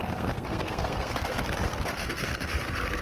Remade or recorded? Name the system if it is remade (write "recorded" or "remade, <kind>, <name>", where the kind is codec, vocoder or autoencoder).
remade, codec, SNAC